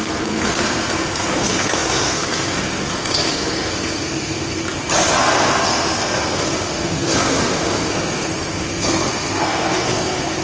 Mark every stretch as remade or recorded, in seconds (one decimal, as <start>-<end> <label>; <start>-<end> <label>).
0.0-4.6 remade; 4.6-5.2 recorded; 5.2-10.4 remade